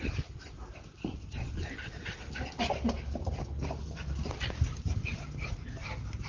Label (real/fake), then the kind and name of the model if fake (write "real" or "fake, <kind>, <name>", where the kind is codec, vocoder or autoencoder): real